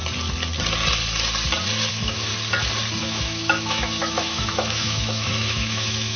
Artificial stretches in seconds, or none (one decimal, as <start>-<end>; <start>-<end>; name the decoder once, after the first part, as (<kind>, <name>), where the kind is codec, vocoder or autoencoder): 1.9-2.3 (autoencoder, DAC-VAE); 3.0-6.2